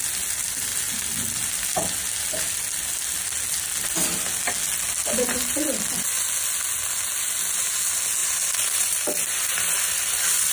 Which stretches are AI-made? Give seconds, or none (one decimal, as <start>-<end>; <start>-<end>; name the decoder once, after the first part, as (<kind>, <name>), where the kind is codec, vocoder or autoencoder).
8.2-10.5 (vocoder, BigVGAN v2)